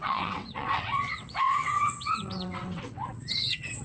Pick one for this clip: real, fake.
fake